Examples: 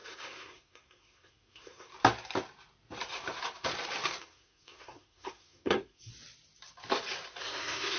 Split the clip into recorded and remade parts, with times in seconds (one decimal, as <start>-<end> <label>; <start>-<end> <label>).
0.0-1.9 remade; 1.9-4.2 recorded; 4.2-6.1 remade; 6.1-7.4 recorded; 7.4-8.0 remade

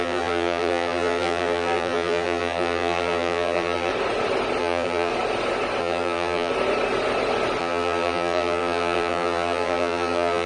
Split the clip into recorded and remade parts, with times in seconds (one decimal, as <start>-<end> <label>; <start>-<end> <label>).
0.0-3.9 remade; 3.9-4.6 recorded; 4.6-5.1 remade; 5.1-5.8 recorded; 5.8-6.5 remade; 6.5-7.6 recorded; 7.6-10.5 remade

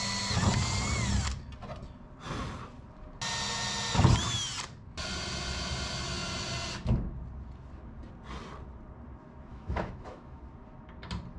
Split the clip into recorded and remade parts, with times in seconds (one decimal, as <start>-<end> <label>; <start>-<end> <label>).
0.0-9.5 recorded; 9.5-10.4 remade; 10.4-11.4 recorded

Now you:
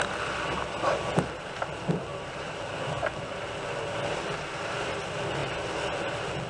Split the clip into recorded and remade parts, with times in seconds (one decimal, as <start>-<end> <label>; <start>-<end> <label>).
0.0-6.5 recorded

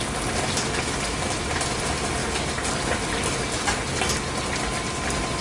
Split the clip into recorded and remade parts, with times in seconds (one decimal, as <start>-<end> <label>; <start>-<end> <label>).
0.0-5.4 recorded

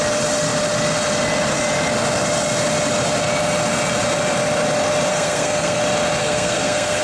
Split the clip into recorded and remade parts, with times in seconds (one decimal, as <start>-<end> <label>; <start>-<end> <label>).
0.0-5.1 recorded; 5.1-5.8 remade; 5.8-6.2 recorded; 6.2-7.0 remade

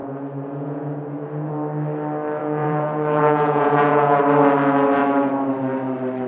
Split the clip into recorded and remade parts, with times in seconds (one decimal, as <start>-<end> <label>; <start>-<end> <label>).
0.0-1.5 remade; 1.5-2.4 recorded; 2.4-4.2 remade; 4.2-6.3 recorded